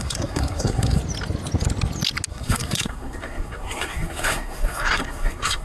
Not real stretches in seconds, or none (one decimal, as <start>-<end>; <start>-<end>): 0.0-1.0; 2.3-5.6